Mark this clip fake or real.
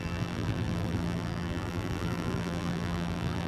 fake